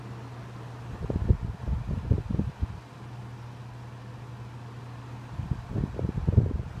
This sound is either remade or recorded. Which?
recorded